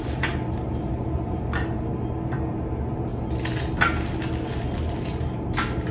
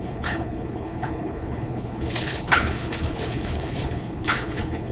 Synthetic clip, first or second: second